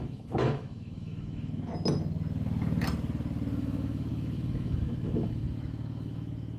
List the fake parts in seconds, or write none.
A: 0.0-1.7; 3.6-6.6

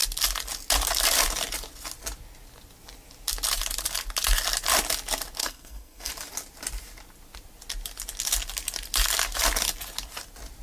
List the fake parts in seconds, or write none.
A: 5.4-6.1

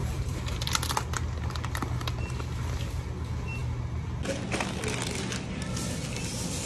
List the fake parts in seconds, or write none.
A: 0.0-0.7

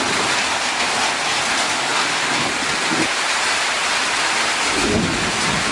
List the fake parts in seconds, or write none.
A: none